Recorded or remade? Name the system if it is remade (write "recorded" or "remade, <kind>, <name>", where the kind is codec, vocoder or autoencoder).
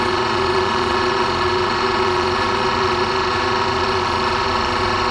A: remade, vocoder, Vocos